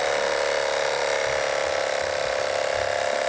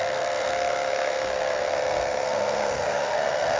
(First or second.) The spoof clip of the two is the second